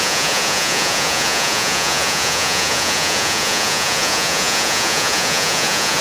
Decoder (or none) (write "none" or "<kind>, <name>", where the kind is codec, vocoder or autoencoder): vocoder, Vocos